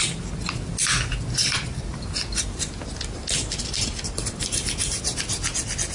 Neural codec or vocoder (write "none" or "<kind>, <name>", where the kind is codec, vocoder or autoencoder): none